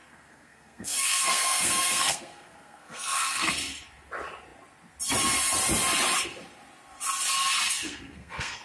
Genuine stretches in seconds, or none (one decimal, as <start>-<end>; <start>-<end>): 3.5-7.7